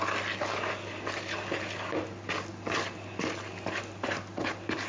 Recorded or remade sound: recorded